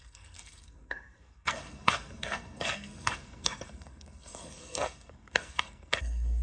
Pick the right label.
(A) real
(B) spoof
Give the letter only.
B